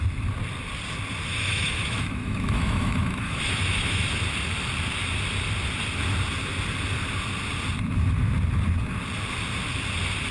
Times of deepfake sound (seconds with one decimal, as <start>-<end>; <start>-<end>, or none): 1.3-4.0